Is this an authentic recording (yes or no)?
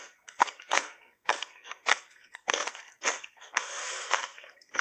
no